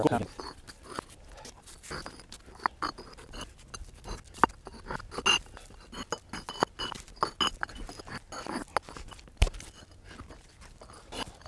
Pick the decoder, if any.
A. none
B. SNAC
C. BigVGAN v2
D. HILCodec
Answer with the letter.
A